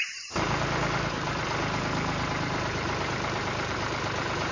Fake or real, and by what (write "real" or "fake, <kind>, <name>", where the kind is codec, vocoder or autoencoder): fake, vocoder, BigVGAN v2